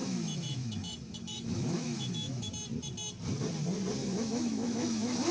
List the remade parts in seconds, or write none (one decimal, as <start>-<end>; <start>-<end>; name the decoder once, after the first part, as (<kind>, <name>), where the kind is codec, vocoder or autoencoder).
0.0-2.5 (autoencoder, DAC-VAE); 4.0-5.3